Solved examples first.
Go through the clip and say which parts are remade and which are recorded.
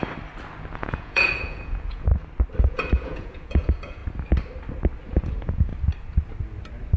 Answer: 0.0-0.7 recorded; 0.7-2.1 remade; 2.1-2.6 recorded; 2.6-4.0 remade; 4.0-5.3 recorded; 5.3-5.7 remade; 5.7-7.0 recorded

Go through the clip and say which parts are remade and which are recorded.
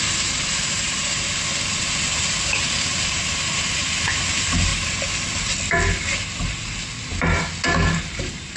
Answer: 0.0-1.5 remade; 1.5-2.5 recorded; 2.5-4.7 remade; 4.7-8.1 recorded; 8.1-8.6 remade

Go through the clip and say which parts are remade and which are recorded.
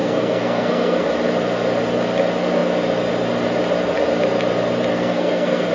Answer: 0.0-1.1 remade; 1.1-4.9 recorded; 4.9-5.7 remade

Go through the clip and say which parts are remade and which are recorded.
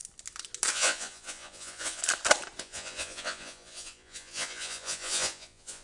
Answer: 0.0-0.7 recorded; 0.7-2.0 remade; 2.0-2.6 recorded; 2.6-5.8 remade